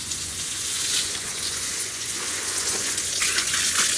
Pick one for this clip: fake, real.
fake